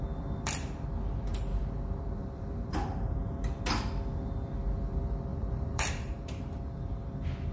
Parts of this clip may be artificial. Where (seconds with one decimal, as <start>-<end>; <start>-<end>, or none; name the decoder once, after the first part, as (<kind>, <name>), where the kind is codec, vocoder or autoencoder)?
1.5-3.1 (vocoder, BigVGAN v2); 5.3-6.6